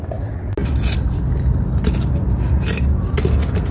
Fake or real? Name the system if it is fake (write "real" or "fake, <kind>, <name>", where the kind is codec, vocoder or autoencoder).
real